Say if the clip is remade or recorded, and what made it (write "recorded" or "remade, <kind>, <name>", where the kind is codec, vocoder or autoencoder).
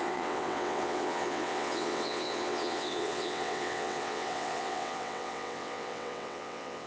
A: remade, vocoder, WaveNeXt